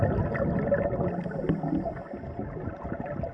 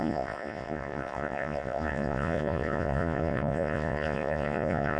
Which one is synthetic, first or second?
second